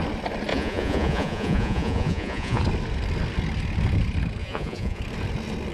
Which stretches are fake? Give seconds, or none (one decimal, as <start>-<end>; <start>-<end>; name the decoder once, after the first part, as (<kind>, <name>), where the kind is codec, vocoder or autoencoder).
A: 0.5-2.6 (vocoder, Vocos); 4.4-5.0